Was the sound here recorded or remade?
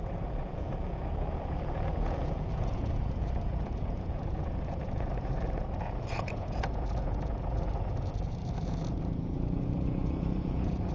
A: remade